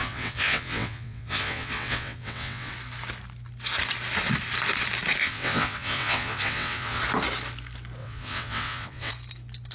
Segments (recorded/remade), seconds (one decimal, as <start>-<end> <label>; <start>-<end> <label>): 0.0-2.7 remade; 2.7-5.2 recorded; 5.2-7.0 remade; 7.0-8.0 recorded; 8.0-9.1 remade; 9.1-9.7 recorded